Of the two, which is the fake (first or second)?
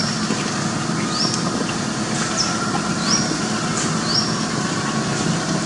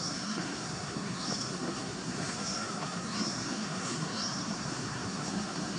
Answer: second